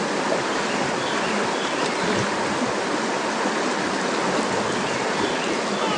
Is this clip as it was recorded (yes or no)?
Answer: yes